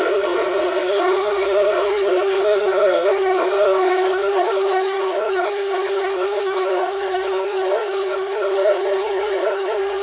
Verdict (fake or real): fake